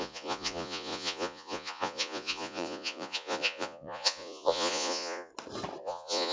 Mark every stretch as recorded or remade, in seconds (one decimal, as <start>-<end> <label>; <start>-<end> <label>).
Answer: 0.0-5.3 remade; 5.3-5.8 recorded; 5.8-6.3 remade